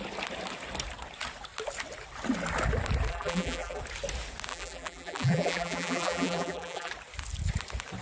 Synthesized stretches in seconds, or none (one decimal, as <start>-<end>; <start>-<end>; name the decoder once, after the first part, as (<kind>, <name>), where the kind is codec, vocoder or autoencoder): 3.1-3.8 (vocoder, BigVGAN v2); 4.5-6.9